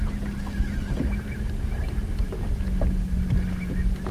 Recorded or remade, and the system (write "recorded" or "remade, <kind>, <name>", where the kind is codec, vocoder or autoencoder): recorded